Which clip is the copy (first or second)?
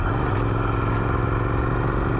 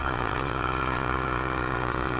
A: second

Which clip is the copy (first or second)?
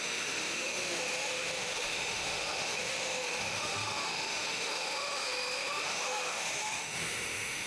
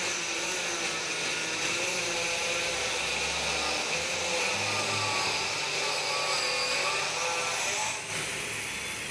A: first